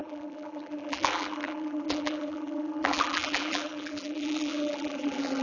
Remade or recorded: remade